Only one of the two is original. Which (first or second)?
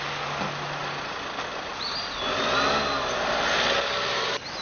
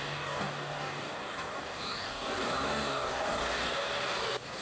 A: first